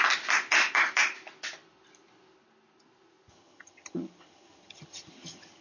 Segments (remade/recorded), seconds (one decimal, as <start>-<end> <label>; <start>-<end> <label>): 0.0-3.3 recorded; 3.3-5.6 remade